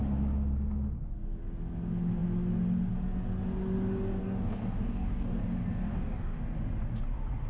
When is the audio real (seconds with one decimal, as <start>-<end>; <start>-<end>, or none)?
0.0-4.2; 5.4-5.9; 6.4-7.5